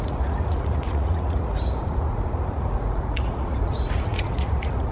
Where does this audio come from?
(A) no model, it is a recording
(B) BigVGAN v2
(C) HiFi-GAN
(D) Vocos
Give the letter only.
D